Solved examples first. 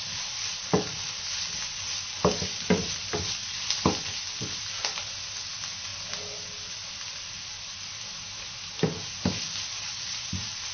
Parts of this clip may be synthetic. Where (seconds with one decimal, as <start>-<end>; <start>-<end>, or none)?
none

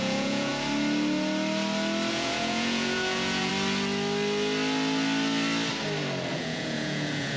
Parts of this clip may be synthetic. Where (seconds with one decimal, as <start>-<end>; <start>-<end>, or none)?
0.0-0.5; 2.1-3.5; 6.3-7.4

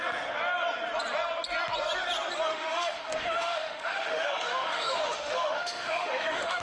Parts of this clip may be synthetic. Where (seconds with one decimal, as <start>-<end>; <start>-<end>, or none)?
2.5-6.6